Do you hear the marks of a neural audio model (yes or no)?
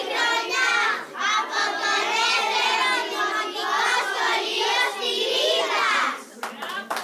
yes